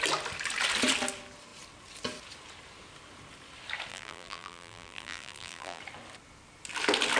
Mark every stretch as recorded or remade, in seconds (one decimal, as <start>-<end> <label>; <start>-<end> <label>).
0.0-3.9 recorded; 3.9-5.8 remade; 5.8-7.2 recorded